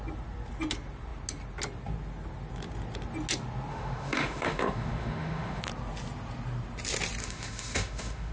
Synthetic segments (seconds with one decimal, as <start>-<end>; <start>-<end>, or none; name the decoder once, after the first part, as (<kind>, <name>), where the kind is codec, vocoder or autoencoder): 3.7-5.6 (autoencoder, DAC-VAE); 7.2-8.3